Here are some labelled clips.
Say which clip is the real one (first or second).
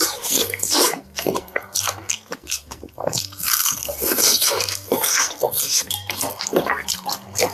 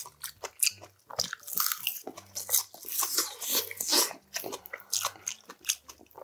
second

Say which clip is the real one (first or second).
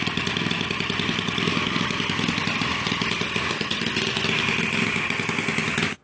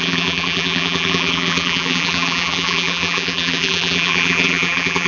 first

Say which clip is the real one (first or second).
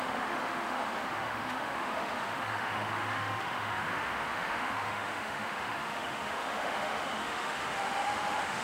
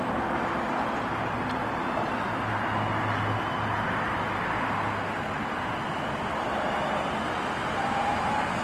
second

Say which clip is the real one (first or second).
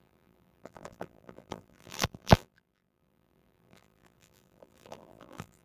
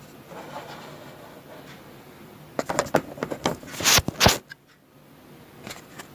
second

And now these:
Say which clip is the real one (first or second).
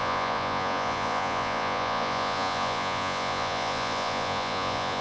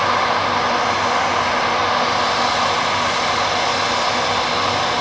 second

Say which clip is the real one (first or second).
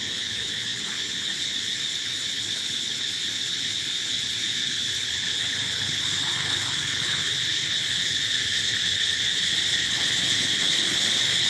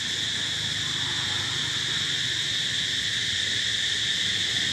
second